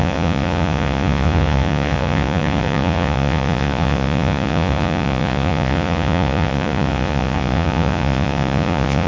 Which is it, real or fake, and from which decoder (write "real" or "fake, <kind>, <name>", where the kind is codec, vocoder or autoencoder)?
fake, vocoder, Vocos